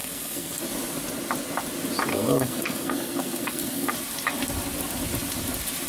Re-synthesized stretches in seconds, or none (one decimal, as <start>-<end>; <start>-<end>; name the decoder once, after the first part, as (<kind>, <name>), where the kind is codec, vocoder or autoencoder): 0.0-0.6 (codec, SNAC); 2.1-3.9